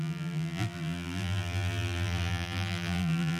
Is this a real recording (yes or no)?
no